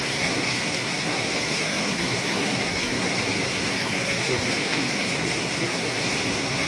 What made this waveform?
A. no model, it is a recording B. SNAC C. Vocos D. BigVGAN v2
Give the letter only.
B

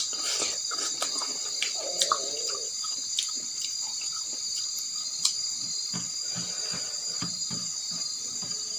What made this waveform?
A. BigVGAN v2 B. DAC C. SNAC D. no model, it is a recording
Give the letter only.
D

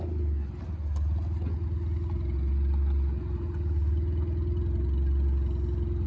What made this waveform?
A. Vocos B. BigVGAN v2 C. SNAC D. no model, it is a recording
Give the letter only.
D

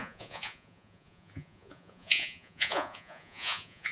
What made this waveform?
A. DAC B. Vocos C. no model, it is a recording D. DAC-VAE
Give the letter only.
B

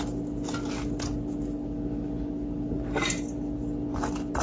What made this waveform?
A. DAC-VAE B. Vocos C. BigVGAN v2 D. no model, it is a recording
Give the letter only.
D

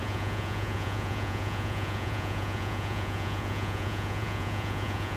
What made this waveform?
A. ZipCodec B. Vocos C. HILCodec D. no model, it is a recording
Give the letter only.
B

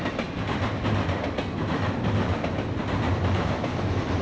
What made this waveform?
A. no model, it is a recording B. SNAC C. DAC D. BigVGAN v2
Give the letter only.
A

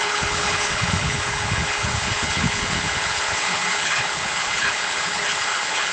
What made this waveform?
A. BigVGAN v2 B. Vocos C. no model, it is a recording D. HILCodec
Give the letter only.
D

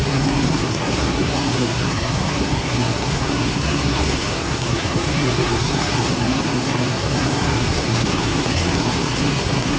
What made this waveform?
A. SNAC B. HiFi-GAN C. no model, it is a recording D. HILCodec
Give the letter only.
A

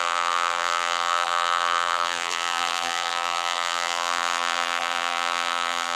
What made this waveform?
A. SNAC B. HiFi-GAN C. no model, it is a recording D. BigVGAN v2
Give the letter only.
D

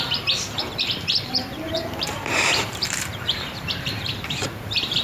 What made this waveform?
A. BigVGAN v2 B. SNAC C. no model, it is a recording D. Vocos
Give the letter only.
A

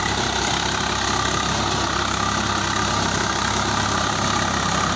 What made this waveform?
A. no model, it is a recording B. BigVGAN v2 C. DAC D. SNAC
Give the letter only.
A